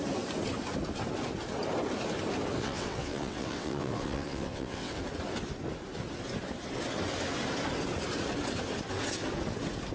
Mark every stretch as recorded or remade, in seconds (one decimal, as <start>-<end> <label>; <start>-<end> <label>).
0.0-2.6 recorded; 2.6-5.0 remade; 5.0-9.9 recorded